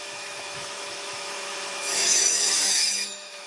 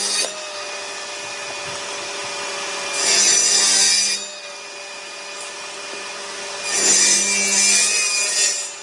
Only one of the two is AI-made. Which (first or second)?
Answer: first